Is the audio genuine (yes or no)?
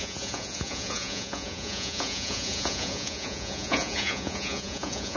no